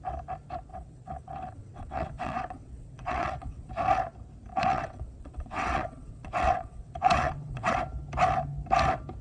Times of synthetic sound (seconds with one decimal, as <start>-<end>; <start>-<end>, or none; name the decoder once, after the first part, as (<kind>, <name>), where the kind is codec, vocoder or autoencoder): 0.7-3.7 (vocoder, WaveNeXt); 4.5-7.8